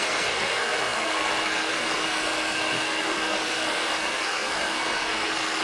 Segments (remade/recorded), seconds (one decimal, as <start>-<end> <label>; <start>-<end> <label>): 0.0-5.6 remade